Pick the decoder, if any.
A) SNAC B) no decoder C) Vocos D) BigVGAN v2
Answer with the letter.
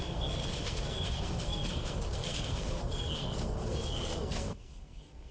A